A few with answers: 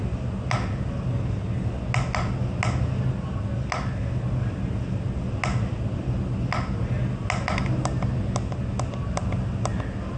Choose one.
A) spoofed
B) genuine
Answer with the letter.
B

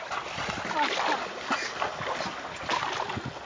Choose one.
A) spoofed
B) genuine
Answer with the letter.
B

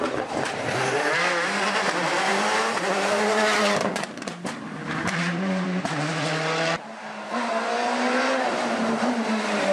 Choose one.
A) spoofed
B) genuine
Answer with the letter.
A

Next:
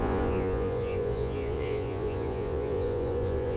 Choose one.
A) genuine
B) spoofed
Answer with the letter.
B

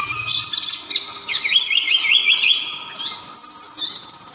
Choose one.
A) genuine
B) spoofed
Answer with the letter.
A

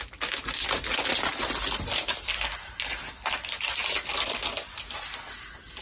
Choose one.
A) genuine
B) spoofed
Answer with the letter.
A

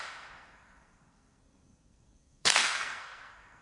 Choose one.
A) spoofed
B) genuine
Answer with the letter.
A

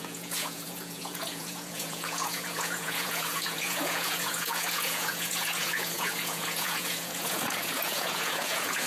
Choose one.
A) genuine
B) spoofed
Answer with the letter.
B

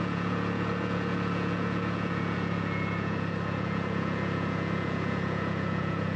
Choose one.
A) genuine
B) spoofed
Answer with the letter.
B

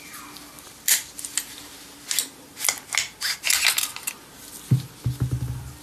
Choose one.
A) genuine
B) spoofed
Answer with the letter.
A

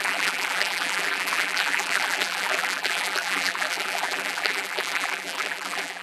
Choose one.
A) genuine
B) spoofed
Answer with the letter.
B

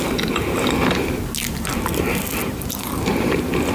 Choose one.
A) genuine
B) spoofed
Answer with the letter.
A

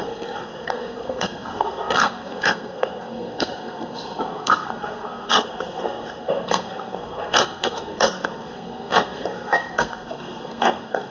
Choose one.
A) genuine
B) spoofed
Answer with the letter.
B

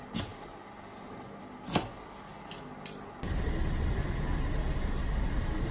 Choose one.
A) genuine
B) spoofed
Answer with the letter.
A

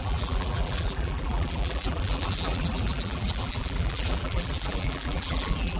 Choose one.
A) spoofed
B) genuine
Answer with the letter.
A